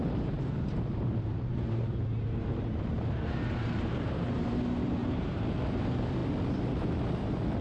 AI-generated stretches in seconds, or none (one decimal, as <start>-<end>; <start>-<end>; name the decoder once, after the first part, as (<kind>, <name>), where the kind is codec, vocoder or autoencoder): 0.0-4.6 (vocoder, BigVGAN v2); 5.0-5.5